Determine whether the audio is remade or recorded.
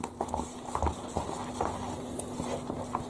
recorded